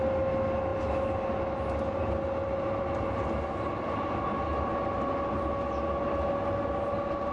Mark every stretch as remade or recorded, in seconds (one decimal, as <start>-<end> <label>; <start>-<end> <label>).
0.0-7.3 recorded